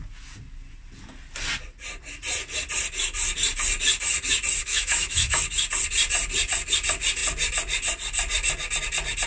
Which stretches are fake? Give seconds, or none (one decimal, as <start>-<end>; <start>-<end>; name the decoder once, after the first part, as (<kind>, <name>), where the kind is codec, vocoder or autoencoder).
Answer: 4.6-5.4 (autoencoder, DAC-VAE)